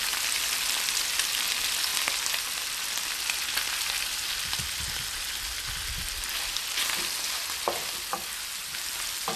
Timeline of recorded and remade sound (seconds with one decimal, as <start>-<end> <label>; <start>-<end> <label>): 0.0-9.4 recorded